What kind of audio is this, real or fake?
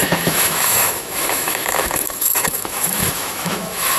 fake